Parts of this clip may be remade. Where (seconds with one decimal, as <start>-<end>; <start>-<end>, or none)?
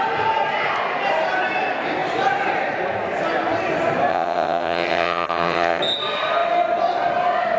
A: 4.1-5.8